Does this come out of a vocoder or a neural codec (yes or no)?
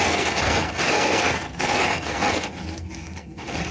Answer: yes